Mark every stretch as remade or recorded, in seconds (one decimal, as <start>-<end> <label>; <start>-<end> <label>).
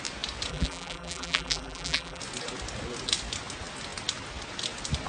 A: 0.0-0.5 recorded; 0.5-2.2 remade; 2.2-5.1 recorded